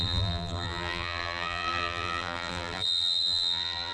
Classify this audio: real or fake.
fake